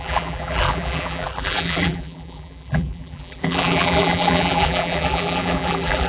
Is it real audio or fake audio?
fake